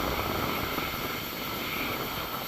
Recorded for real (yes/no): yes